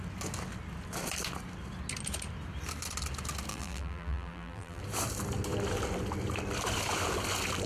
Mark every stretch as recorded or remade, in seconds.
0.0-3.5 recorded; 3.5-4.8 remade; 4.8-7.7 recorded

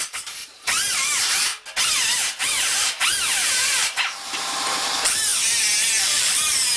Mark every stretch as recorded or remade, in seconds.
0.0-1.5 remade; 1.5-3.0 recorded; 3.0-5.3 remade; 5.3-6.0 recorded; 6.0-6.8 remade

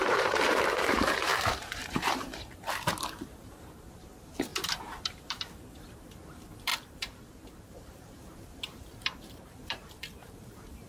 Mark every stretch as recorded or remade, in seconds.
0.0-10.9 remade